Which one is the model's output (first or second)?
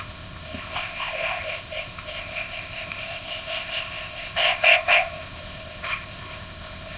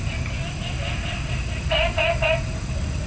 first